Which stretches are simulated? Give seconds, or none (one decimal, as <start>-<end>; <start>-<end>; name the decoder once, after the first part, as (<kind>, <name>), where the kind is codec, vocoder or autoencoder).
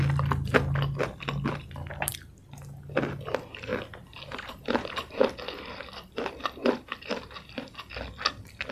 2.1-2.9 (vocoder, BigVGAN v2); 3.7-7.8